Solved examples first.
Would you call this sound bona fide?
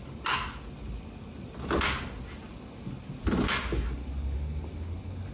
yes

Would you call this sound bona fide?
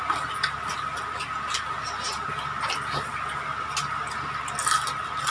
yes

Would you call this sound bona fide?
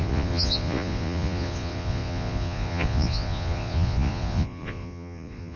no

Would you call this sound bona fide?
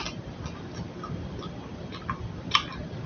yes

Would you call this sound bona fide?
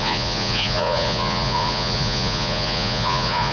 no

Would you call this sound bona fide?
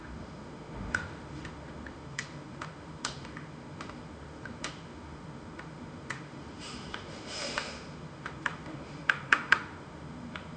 no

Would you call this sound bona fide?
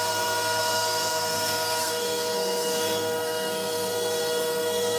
no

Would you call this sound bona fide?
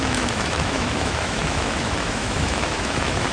no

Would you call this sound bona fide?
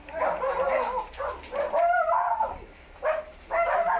no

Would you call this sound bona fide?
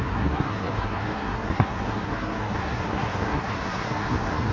no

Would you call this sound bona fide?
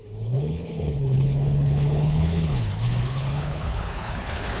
no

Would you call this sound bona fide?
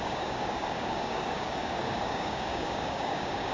no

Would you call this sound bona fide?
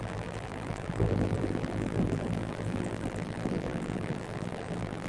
no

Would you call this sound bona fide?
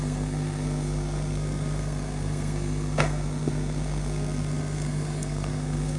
no